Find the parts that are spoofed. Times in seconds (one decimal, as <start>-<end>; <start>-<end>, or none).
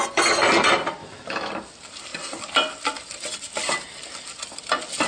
1.0-1.5